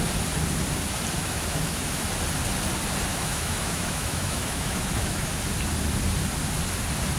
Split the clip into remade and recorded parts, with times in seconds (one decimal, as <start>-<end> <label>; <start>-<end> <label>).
0.0-1.2 recorded; 1.2-2.1 remade; 2.1-3.1 recorded; 3.1-5.3 remade; 5.3-7.2 recorded